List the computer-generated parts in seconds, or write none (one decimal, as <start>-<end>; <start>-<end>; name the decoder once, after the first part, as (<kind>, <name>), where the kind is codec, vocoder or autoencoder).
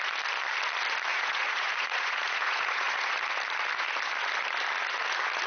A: 1.1-3.2 (vocoder, Vocos)